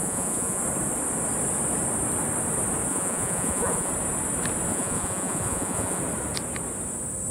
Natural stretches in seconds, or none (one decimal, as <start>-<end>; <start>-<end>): 0.6-2.9; 3.9-4.7; 6.0-7.3